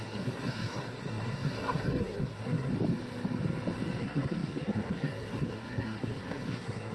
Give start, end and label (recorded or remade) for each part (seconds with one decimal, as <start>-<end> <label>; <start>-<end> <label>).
0.0-2.7 remade; 2.7-4.0 recorded; 4.0-6.9 remade